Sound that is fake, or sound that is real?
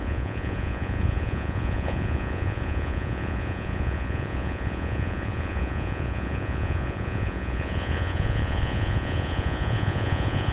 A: fake